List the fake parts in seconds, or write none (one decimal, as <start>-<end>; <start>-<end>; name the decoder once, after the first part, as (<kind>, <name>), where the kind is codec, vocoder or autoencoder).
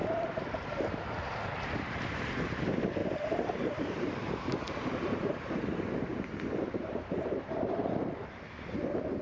0.0-2.6 (vocoder, BigVGAN v2); 3.0-7.8